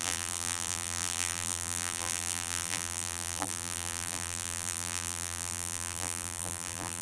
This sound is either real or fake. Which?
fake